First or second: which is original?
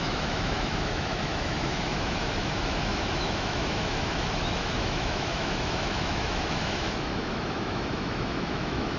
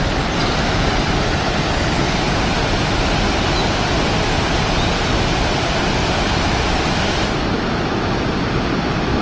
second